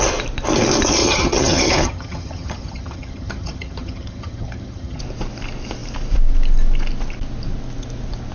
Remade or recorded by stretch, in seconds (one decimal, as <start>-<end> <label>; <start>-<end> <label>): 0.0-1.0 recorded; 1.0-5.0 remade; 5.0-8.3 recorded

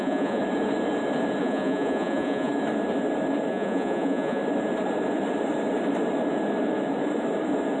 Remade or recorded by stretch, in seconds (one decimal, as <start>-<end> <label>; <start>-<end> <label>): 0.0-0.4 remade; 0.4-1.4 recorded; 1.4-2.5 remade; 2.5-3.5 recorded; 3.5-4.4 remade; 4.4-7.8 recorded

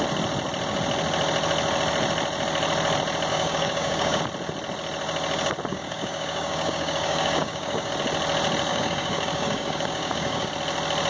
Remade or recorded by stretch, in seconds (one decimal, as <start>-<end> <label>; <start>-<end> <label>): 0.0-3.3 recorded; 3.3-4.2 remade; 4.2-5.7 recorded; 5.7-7.9 remade; 7.9-8.7 recorded; 8.7-10.5 remade; 10.5-11.1 recorded